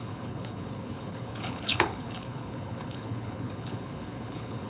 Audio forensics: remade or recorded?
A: remade